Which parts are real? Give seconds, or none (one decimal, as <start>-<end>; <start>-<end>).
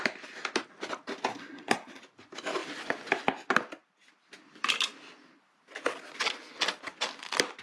0.0-1.3; 2.0-7.6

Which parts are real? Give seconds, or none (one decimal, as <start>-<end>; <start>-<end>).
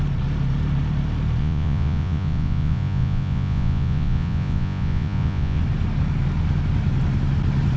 0.0-1.4; 5.6-7.8